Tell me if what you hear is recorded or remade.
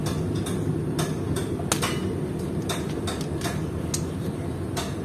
recorded